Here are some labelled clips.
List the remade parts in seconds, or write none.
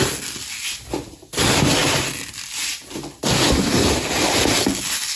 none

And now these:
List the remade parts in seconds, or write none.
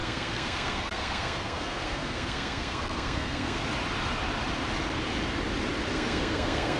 0.0-3.6 (codec, SNAC); 5.9-6.8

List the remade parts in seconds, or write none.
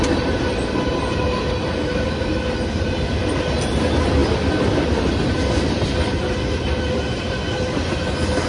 none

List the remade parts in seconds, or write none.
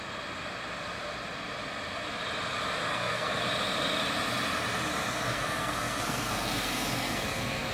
2.9-3.4 (codec, SNAC); 5.3-7.7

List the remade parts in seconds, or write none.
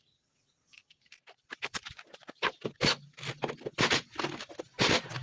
none